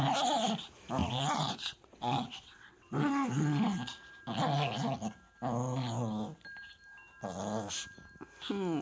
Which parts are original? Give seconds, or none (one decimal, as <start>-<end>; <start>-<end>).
0.0-1.0; 3.1-8.8